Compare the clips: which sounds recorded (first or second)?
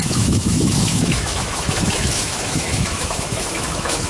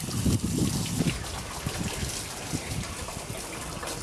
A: second